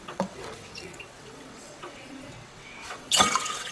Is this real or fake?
fake